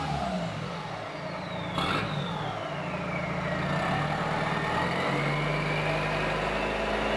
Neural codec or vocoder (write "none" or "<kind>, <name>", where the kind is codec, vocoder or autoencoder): none